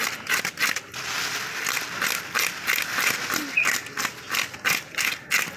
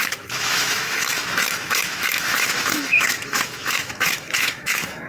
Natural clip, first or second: first